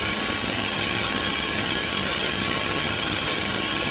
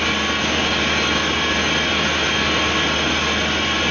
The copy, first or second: first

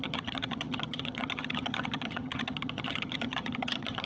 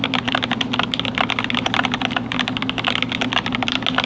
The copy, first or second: first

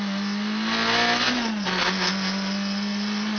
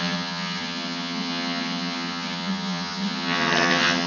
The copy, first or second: second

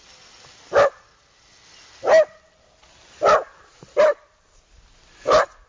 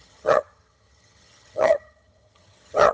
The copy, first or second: second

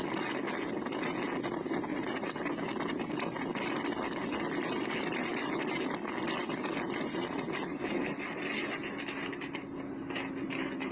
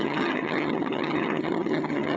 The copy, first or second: second